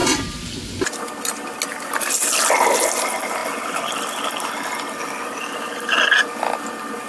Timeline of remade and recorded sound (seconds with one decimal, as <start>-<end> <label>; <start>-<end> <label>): 0.0-7.1 recorded